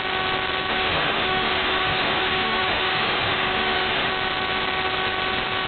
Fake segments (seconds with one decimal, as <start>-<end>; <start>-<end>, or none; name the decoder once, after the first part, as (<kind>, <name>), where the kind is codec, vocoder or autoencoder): 0.7-4.1 (autoencoder, DAC-VAE)